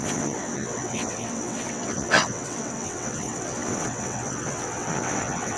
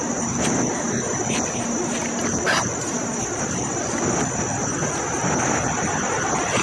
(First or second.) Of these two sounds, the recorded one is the second